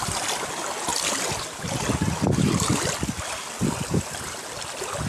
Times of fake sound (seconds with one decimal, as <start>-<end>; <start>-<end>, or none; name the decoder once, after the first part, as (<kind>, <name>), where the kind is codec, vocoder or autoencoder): none